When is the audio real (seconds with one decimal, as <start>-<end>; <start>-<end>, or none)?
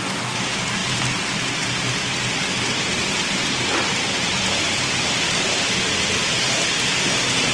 0.0-7.5